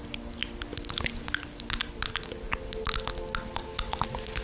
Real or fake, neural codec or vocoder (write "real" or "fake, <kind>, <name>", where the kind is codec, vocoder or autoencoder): real